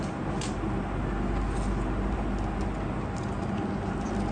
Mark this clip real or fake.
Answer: real